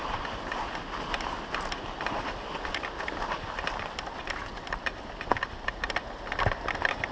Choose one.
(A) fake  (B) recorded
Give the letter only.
B